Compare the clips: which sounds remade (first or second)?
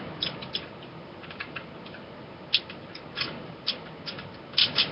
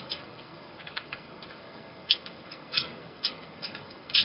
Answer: second